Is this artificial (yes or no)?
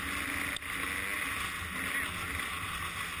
no